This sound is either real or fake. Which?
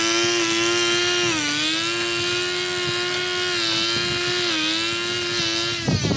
real